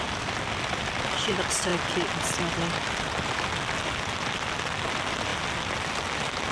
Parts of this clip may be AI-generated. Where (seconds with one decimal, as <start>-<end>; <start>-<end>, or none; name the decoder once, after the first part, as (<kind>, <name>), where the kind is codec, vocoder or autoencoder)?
none